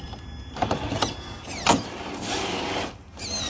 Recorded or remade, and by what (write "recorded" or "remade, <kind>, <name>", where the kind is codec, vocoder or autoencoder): recorded